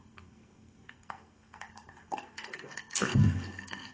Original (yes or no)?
no